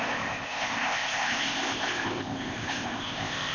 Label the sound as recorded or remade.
remade